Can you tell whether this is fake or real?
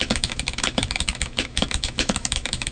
fake